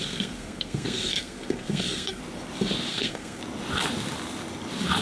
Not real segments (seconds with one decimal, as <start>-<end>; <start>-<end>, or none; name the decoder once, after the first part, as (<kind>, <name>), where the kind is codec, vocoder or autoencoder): 0.0-2.2 (codec, SNAC); 2.9-3.4